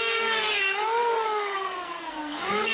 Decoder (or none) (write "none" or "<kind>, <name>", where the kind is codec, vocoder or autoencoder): codec, SNAC